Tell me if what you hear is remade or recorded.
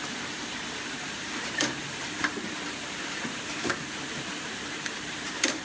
remade